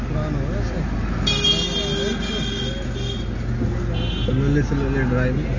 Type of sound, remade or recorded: recorded